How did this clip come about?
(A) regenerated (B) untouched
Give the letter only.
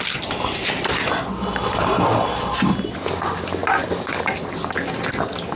B